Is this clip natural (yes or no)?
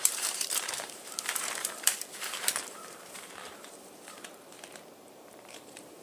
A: no